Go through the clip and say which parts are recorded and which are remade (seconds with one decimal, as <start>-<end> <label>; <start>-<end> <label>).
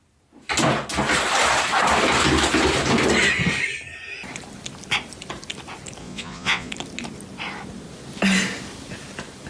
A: 0.0-6.0 recorded; 6.0-6.7 remade; 6.7-9.5 recorded